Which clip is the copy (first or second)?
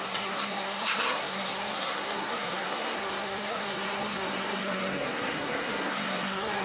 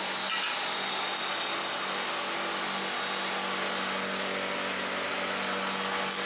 first